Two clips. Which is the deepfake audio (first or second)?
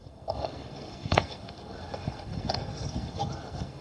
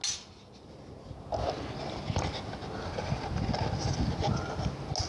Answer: first